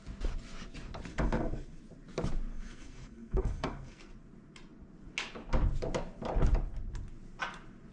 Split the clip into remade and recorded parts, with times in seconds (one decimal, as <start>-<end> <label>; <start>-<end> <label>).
0.0-1.1 recorded; 1.1-1.8 remade; 1.8-2.5 recorded; 2.5-4.1 remade; 4.1-7.9 recorded